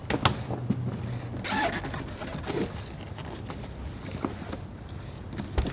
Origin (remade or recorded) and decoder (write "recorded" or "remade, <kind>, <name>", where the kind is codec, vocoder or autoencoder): recorded